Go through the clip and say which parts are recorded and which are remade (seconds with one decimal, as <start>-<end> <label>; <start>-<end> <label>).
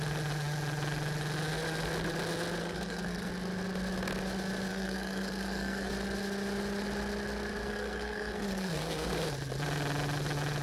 0.0-2.6 recorded; 2.6-3.3 remade; 3.3-4.7 recorded; 4.7-5.9 remade; 5.9-7.6 recorded; 7.6-9.1 remade; 9.1-10.6 recorded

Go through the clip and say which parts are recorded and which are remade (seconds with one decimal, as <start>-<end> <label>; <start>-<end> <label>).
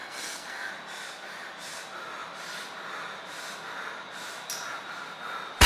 0.0-0.7 remade; 0.7-5.7 recorded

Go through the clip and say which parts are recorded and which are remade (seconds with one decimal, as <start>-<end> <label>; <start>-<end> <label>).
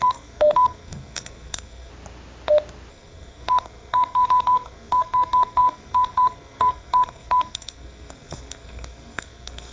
0.0-1.9 remade; 1.9-2.9 recorded; 2.9-9.7 remade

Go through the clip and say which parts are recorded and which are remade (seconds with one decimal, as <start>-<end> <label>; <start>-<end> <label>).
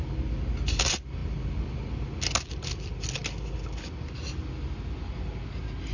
0.0-5.9 recorded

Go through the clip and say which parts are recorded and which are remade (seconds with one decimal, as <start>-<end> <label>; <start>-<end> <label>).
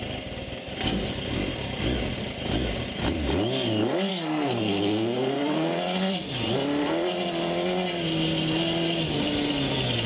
0.0-4.1 recorded; 4.1-5.7 remade; 5.7-10.1 recorded